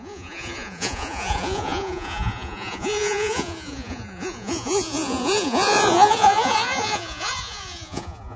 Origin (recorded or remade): remade